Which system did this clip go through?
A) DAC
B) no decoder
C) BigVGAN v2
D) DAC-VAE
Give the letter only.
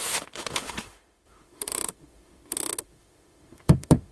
D